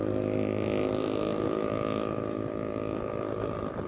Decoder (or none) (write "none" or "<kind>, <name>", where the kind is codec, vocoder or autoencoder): none